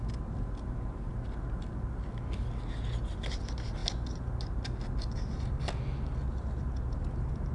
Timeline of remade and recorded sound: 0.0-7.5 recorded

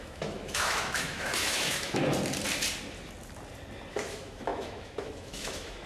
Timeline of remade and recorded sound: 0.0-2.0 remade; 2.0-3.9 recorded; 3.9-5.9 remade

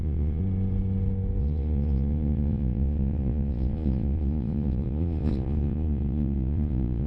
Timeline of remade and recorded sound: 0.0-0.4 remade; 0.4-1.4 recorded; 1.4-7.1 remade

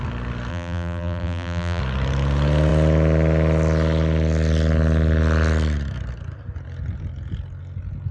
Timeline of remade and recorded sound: 0.0-0.5 recorded; 0.5-1.8 remade; 1.8-8.1 recorded

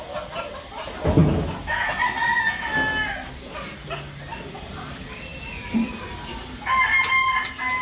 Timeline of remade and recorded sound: 0.0-7.8 recorded